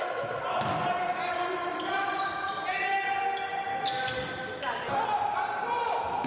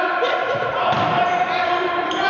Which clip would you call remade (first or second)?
second